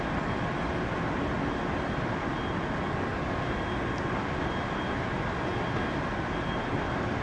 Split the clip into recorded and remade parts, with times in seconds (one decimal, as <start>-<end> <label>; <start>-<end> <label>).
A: 0.0-7.2 recorded